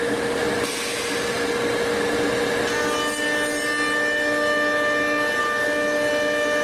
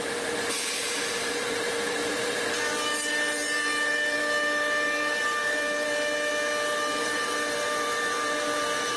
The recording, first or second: first